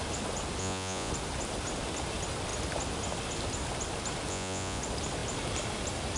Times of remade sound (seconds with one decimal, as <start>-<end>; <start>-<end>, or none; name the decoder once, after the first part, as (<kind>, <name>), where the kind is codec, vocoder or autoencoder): 0.6-1.1 (vocoder, Vocos); 4.3-4.8